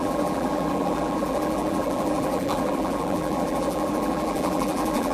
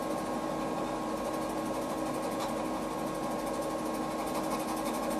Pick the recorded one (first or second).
second